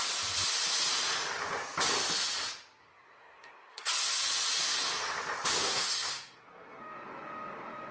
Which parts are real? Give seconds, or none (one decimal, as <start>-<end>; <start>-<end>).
0.0-2.8; 3.9-5.6; 6.8-7.9